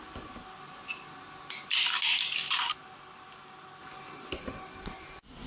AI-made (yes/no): no